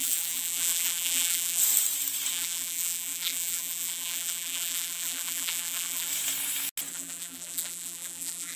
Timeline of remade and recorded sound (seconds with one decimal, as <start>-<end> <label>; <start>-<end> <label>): 0.0-1.6 remade; 1.6-2.3 recorded; 2.3-6.1 remade; 6.1-6.9 recorded; 6.9-8.6 remade

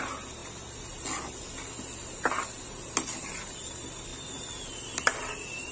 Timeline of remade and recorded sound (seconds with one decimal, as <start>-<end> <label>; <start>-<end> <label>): 0.0-5.7 recorded